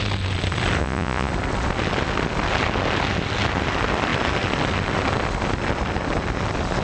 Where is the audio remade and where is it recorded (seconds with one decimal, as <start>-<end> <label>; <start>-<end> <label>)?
0.0-0.8 recorded; 0.8-1.3 remade; 1.3-6.8 recorded